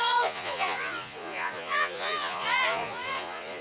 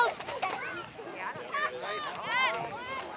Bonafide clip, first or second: second